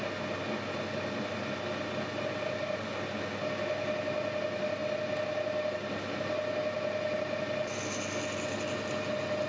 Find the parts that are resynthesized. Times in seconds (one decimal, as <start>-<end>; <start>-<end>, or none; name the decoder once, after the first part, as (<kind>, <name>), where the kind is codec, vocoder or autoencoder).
none